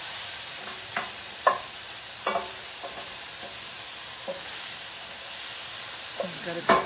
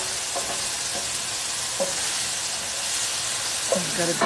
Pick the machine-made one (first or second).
first